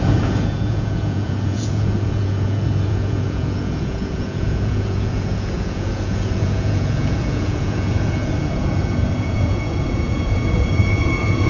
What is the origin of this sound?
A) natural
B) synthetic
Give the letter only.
B